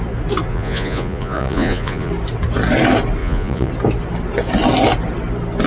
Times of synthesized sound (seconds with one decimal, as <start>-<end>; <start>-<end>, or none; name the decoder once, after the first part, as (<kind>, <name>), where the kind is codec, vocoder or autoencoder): 0.5-2.1 (vocoder, Vocos); 3.2-3.7